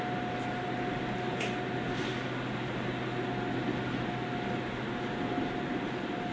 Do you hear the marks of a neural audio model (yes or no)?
no